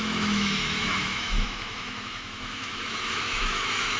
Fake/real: fake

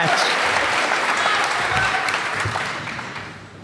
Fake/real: fake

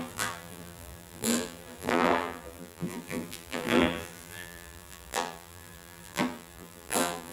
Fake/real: fake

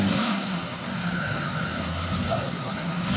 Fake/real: fake